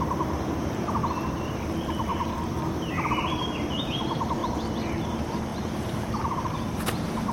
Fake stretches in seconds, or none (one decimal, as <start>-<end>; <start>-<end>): 0.0-1.0; 1.5-2.1; 2.7-4.4; 5.0-7.3